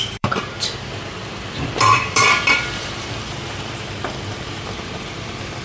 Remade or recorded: remade